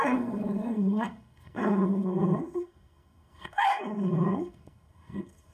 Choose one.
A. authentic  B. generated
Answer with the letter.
B